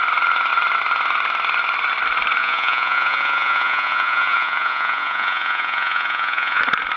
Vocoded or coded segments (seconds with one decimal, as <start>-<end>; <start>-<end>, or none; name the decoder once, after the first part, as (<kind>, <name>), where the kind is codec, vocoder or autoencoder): 2.4-6.6 (vocoder, Vocos)